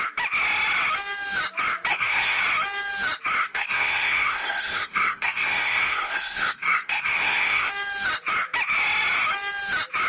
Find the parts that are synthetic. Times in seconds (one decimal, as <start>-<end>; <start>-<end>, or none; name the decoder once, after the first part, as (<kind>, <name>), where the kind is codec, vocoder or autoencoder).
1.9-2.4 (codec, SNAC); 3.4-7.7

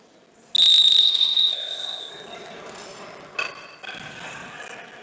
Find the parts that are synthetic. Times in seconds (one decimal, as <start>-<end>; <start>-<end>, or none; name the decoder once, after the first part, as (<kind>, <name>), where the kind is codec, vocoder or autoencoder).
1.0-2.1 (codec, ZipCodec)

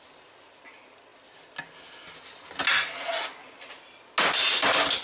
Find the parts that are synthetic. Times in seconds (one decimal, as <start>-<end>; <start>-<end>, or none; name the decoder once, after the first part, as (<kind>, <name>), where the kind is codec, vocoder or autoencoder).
none